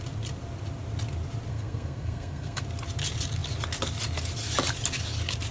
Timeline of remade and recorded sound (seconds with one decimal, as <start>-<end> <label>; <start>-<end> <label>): 0.0-1.5 recorded; 1.5-2.6 remade; 2.6-5.5 recorded